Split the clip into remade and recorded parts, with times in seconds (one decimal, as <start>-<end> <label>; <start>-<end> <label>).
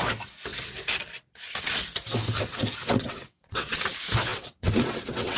0.0-2.8 recorded; 2.8-3.8 remade; 3.8-4.3 recorded; 4.3-5.4 remade